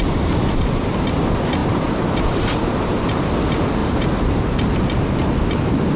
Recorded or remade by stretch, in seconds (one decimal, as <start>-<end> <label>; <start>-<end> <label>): 0.0-1.6 recorded; 1.6-3.2 remade; 3.2-3.8 recorded; 3.8-4.3 remade; 4.3-6.0 recorded